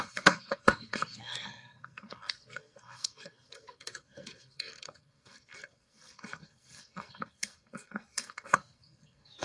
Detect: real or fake fake